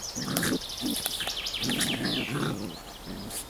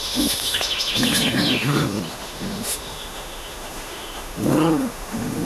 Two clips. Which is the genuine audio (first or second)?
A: first